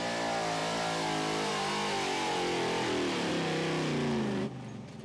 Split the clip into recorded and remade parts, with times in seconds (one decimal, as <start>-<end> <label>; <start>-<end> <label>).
0.0-5.0 recorded